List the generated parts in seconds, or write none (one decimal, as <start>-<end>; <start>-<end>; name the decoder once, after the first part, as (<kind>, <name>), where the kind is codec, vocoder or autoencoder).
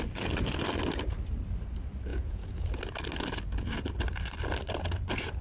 2.1-2.8 (vocoder, Vocos)